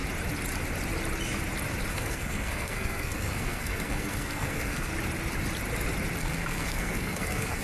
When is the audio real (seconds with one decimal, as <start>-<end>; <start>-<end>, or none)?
0.0-1.9; 4.9-6.2